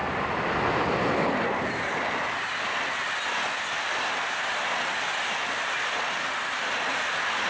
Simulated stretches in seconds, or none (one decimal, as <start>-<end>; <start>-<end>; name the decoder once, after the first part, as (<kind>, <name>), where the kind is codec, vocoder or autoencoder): none